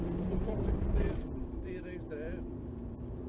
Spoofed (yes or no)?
yes